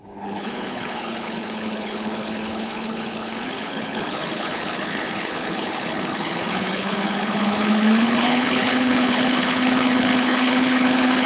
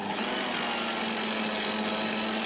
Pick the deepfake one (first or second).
first